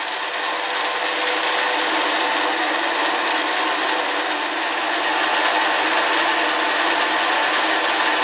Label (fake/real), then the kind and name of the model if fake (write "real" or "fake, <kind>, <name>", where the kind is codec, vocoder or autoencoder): real